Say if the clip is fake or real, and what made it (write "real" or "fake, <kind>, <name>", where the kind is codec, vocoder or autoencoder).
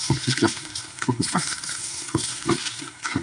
fake, codec, SNAC